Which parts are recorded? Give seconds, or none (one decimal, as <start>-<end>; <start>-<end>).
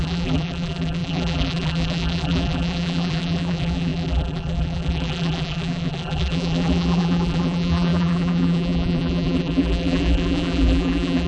none